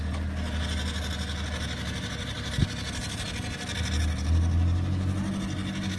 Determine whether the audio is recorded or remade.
recorded